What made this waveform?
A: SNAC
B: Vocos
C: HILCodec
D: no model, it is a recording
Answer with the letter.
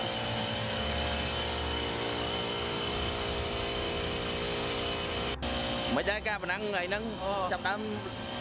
D